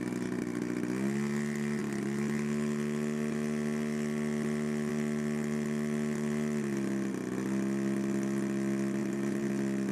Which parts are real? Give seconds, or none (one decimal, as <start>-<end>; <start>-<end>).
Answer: 0.0-9.0; 9.5-9.9